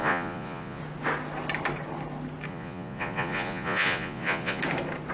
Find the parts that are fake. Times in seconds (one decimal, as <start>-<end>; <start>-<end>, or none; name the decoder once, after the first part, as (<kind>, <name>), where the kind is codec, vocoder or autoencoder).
0.0-0.8 (vocoder, Vocos); 2.5-4.6